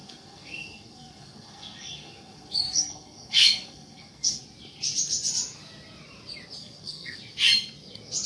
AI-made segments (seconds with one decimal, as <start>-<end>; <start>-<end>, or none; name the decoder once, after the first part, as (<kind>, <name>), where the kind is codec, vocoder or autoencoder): 0.0-4.4 (codec, SNAC); 6.6-7.2